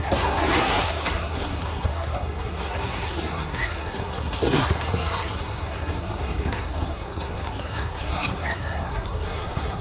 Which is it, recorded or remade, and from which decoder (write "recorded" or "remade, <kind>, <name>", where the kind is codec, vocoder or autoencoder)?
remade, codec, SNAC